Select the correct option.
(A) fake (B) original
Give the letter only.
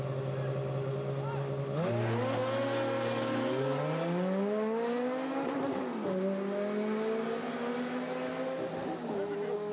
B